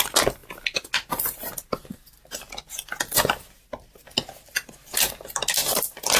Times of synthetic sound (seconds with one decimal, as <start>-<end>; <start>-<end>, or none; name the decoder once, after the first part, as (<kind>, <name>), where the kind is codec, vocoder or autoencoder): none